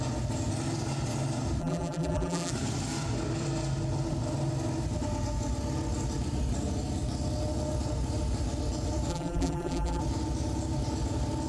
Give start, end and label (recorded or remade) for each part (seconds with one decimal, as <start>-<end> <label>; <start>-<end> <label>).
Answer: 0.0-1.6 recorded; 1.6-2.5 remade; 2.5-9.1 recorded; 9.1-10.0 remade; 10.0-11.5 recorded